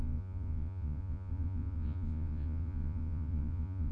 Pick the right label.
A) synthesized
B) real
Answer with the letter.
A